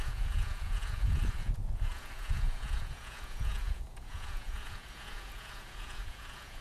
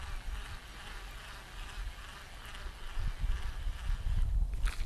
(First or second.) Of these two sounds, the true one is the second